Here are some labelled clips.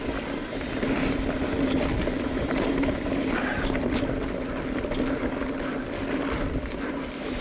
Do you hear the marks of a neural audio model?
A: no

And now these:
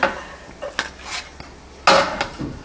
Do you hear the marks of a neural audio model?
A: no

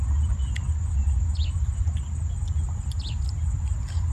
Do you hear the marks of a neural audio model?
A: no